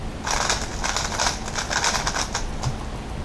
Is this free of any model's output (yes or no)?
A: yes